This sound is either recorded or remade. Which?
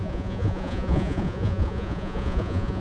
remade